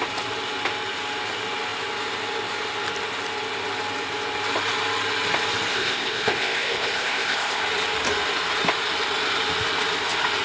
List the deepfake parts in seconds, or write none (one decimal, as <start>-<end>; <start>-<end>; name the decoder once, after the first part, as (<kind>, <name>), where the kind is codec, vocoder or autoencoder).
5.7-7.6 (codec, ZipCodec)